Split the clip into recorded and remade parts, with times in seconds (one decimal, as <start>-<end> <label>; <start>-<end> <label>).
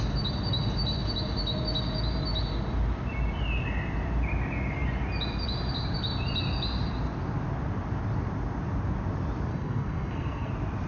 0.0-9.5 recorded; 9.5-10.5 remade; 10.5-10.9 recorded